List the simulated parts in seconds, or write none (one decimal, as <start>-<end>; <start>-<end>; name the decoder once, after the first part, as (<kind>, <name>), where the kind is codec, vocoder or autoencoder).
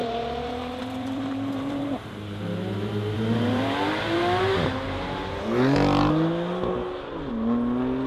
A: 0.0-5.2 (vocoder, BigVGAN v2)